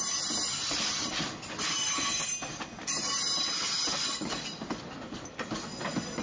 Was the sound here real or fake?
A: real